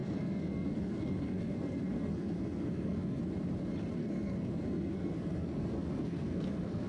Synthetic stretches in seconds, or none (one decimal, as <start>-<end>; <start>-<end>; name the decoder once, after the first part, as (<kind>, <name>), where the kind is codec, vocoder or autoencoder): 0.0-3.2 (codec, SNAC); 4.0-6.9